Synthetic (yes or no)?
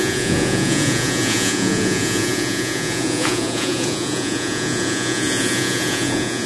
yes